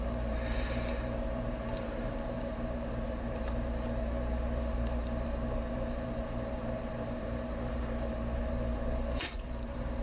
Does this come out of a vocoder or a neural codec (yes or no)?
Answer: yes